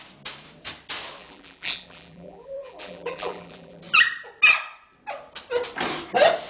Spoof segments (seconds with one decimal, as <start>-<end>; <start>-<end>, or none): 1.2-3.8

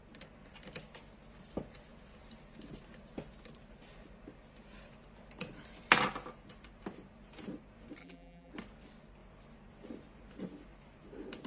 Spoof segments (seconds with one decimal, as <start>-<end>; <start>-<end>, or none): 8.0-8.5

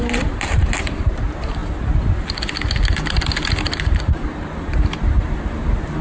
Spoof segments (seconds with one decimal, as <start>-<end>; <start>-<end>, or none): 0.0-1.6; 4.0-6.0

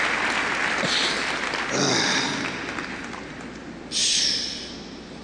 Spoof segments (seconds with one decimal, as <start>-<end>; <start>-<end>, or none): none

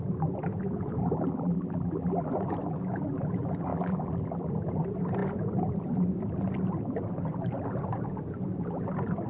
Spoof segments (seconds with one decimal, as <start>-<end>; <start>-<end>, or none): 1.0-2.3; 3.7-4.5

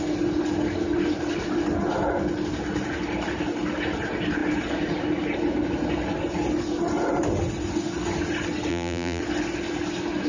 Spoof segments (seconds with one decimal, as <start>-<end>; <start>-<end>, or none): 8.7-9.2

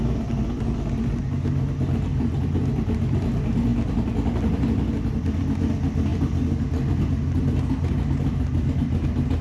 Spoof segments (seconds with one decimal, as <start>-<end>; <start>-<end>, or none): 2.1-3.2; 3.7-4.8